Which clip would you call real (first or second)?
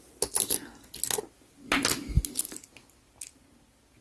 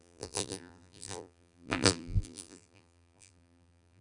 first